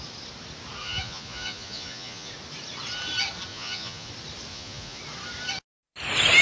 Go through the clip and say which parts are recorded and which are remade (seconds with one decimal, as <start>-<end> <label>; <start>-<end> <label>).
0.0-0.8 recorded; 0.8-2.3 remade; 2.3-3.5 recorded; 3.5-4.1 remade; 4.1-4.5 recorded; 4.5-5.0 remade; 5.0-6.4 recorded